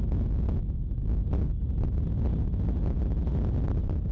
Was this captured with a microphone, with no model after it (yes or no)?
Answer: yes